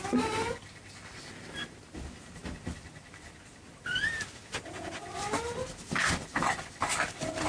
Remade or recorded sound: recorded